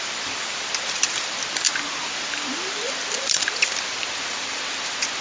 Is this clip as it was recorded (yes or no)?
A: no